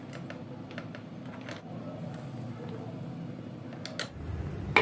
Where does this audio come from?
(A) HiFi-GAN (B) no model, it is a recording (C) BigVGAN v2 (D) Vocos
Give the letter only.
B